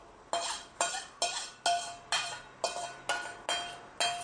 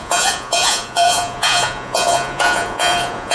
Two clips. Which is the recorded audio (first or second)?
first